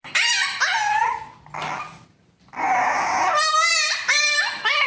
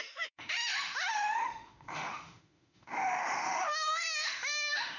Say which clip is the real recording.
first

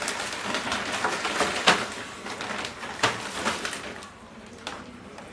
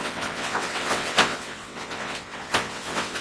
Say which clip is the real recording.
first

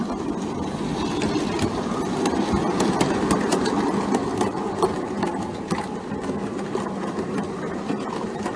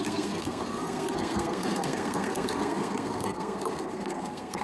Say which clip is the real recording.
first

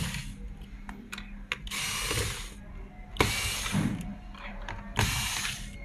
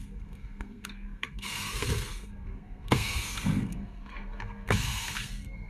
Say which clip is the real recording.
first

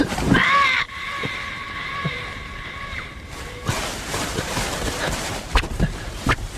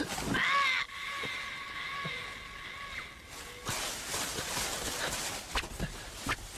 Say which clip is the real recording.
second